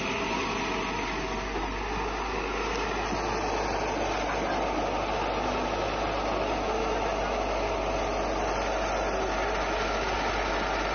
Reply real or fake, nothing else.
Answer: real